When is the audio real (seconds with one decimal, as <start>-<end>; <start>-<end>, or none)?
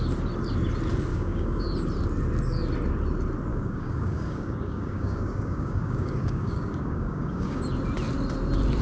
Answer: 0.0-1.1; 1.6-3.5; 7.6-8.8